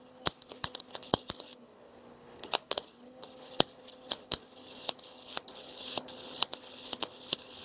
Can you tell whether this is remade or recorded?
remade